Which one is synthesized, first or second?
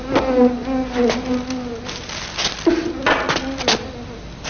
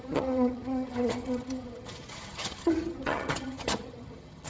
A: second